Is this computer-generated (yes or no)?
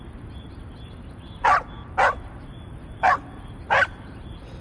no